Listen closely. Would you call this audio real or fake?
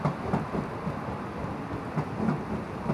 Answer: real